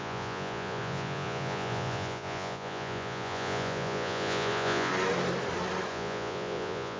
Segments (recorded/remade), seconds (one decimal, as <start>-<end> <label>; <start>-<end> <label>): 0.0-4.9 remade; 4.9-5.9 recorded; 5.9-7.0 remade

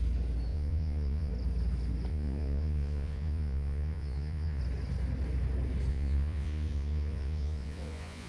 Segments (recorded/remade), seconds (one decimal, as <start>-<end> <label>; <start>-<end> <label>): 0.0-0.5 recorded; 0.5-1.3 remade; 1.3-2.1 recorded; 2.1-4.6 remade; 4.6-5.9 recorded; 5.9-8.3 remade

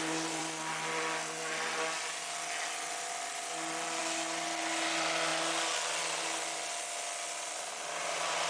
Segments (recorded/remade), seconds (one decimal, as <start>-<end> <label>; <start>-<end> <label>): 0.0-8.5 recorded